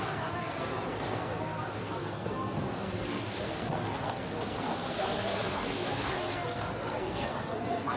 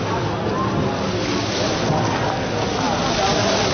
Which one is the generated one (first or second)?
first